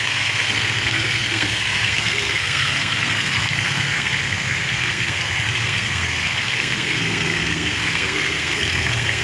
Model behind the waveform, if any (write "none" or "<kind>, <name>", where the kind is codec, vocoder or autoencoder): codec, SNAC